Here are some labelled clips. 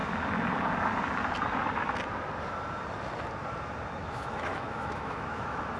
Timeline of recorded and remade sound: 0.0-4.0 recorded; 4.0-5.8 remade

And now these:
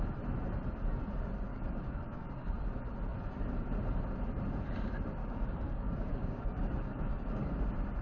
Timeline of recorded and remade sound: 0.0-1.5 recorded; 1.5-2.5 remade; 2.5-5.2 recorded; 5.2-7.5 remade; 7.5-8.0 recorded

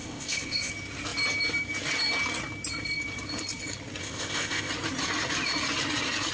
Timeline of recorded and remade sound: 0.0-0.7 remade; 0.7-4.0 recorded; 4.0-4.7 remade; 4.7-6.3 recorded